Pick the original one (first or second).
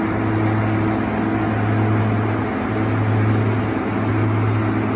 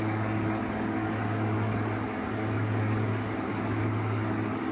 first